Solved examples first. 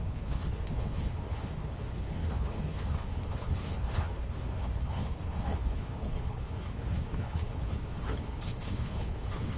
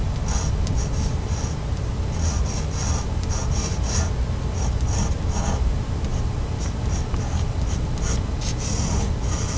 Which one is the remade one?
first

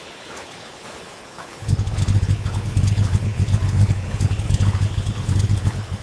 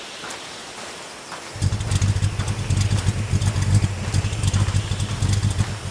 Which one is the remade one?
first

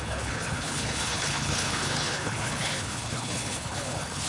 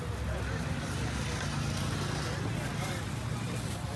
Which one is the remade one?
first